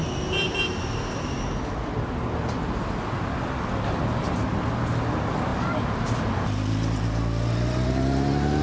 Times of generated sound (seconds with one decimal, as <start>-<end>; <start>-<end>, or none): none